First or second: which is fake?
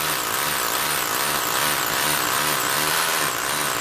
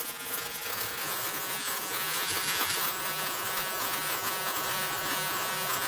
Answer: second